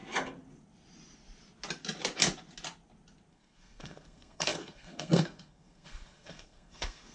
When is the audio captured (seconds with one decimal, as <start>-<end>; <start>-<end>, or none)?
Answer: 0.0-3.3